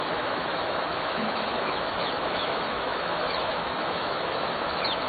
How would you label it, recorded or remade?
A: remade